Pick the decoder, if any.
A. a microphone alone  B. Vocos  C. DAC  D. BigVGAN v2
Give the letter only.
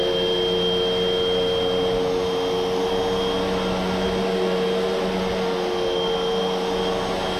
A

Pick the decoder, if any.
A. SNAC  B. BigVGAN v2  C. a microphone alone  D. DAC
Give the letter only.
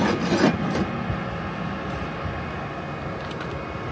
C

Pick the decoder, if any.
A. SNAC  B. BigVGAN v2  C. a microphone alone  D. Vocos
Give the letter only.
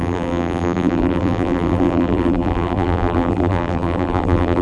B